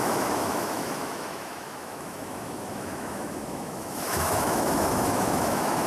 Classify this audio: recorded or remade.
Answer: remade